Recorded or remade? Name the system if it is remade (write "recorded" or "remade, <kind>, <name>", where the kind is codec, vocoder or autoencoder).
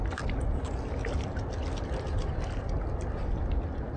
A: recorded